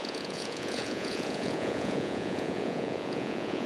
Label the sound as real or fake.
fake